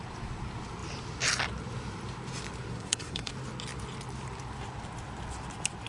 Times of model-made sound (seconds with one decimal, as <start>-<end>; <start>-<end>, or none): 2.7-3.3